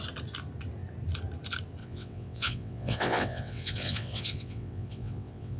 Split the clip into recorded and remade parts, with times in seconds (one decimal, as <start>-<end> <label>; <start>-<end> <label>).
0.0-1.8 recorded; 1.8-5.6 remade